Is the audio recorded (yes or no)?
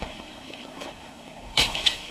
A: no